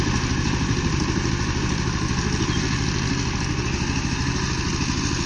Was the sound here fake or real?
real